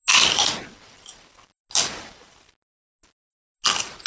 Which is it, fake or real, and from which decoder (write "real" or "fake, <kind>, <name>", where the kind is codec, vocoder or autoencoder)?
real